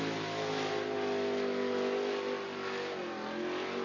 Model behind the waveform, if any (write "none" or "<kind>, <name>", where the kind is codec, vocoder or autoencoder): none